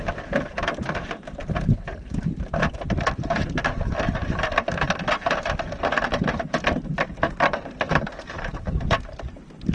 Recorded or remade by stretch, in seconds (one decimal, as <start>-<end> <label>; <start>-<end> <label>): 0.0-9.7 remade

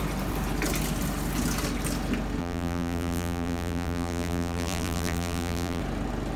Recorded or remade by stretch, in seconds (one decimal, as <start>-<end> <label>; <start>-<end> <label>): 0.0-2.4 recorded; 2.4-5.8 remade; 5.8-6.4 recorded

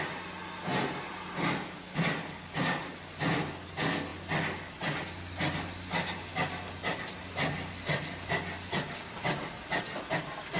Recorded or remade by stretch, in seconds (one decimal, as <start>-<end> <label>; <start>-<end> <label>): 0.0-0.7 recorded; 0.7-1.3 remade; 1.3-10.6 recorded

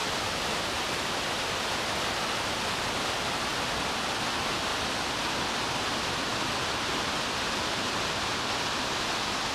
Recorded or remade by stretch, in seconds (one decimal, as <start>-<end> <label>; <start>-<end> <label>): 0.0-0.8 remade; 0.8-6.3 recorded; 6.3-6.9 remade; 6.9-9.5 recorded

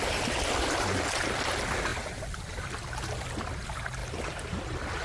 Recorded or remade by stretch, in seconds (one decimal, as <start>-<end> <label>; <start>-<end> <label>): 0.0-5.0 recorded

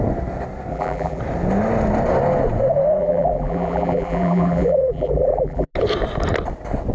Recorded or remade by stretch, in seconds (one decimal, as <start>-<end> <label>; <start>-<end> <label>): 0.0-0.7 recorded; 0.7-1.2 remade; 1.2-3.0 recorded; 3.0-5.7 remade; 5.7-6.9 recorded

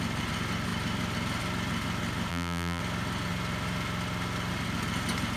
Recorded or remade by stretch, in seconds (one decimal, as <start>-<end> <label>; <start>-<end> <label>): 0.0-2.3 recorded; 2.3-2.8 remade; 2.8-5.4 recorded

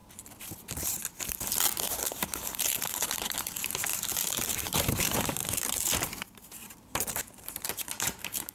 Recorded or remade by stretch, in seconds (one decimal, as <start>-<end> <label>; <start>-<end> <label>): 0.0-1.8 recorded; 1.8-8.5 remade